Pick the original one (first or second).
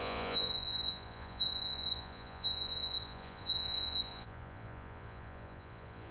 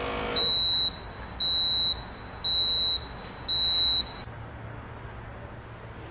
second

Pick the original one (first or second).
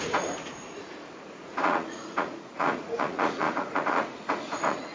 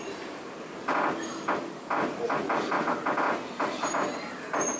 second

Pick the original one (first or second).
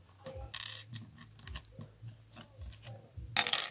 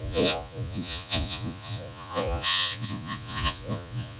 first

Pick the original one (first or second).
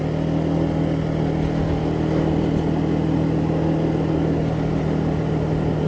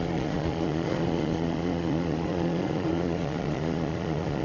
first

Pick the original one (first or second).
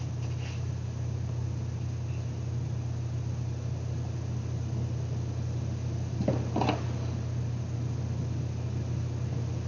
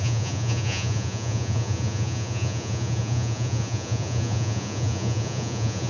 first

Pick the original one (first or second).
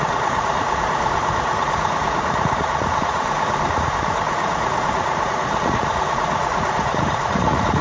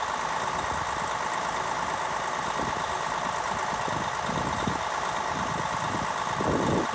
second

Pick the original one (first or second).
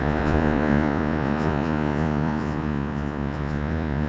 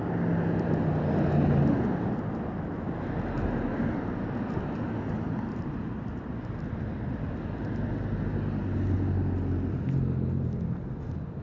second